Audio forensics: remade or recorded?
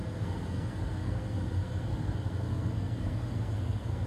remade